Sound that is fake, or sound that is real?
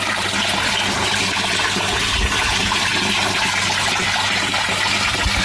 real